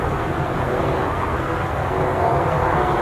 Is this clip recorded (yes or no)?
no